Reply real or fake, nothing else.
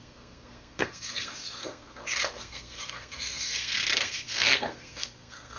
fake